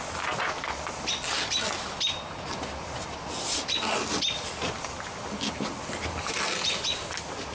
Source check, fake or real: real